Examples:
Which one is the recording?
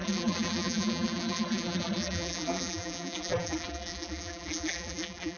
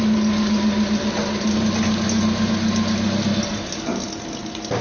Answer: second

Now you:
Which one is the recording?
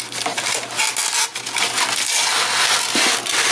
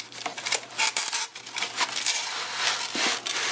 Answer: first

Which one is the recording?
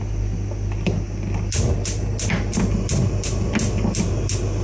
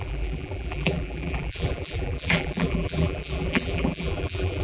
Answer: first